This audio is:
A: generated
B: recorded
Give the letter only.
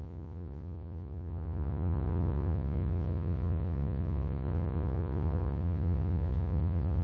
A